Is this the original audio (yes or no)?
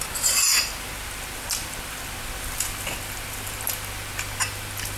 yes